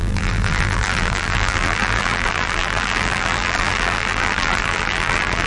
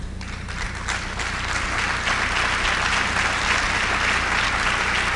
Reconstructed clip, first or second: first